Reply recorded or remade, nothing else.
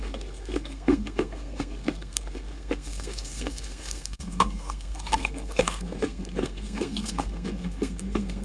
remade